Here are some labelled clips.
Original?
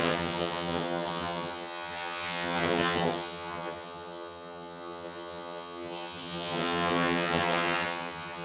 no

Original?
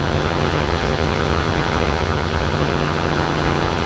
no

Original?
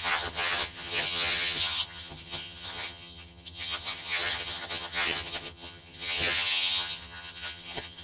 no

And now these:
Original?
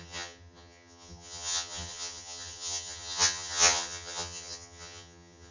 no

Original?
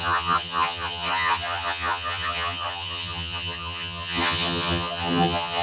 no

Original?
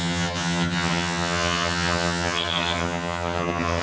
no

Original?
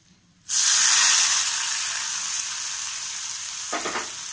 yes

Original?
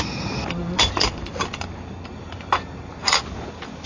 yes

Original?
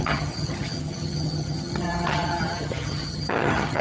no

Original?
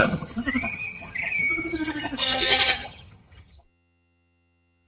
no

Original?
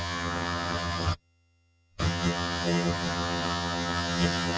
no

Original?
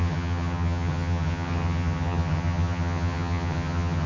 no